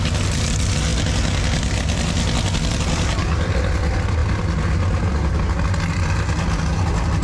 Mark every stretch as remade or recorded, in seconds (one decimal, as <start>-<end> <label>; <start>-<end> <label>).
0.0-7.2 recorded